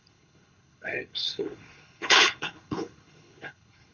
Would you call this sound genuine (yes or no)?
no